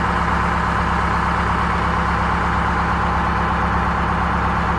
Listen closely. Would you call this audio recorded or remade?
recorded